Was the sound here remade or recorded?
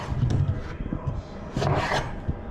recorded